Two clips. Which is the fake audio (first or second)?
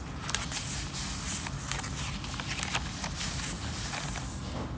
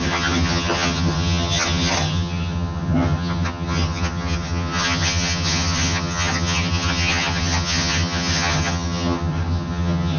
second